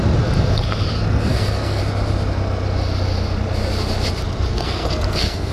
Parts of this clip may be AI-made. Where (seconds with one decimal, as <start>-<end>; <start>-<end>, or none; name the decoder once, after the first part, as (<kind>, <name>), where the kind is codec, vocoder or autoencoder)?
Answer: 1.3-1.8 (codec, SNAC); 4.5-5.5